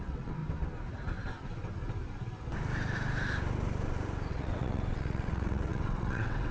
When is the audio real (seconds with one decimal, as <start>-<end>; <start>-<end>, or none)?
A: 0.4-4.3